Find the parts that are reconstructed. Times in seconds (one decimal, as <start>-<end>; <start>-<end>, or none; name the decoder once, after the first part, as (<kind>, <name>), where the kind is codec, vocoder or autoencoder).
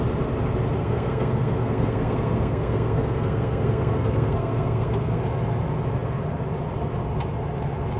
0.8-5.2 (codec, SNAC)